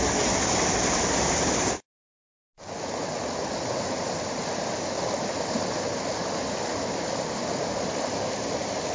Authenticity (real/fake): real